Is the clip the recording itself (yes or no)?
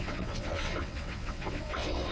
no